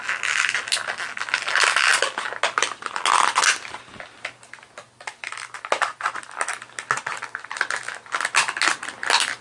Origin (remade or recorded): recorded